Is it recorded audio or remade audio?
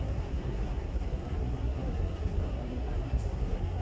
remade